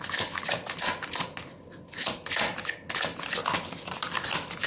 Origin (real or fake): real